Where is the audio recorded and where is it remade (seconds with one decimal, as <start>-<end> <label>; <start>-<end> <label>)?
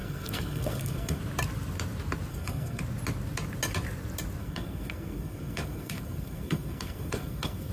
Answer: 0.0-1.2 remade; 1.2-2.3 recorded; 2.3-2.8 remade; 2.8-4.4 recorded; 4.4-7.7 remade